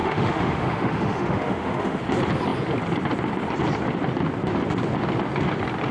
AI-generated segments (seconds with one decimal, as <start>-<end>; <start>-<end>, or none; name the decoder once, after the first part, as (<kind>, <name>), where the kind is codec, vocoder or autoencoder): 0.0-2.0 (autoencoder, DAC-VAE)